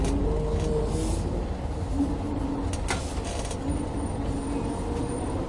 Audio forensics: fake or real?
real